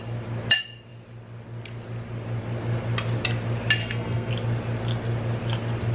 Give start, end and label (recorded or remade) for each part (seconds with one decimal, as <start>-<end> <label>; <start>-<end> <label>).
0.0-3.8 recorded; 3.8-4.3 remade; 4.3-5.9 recorded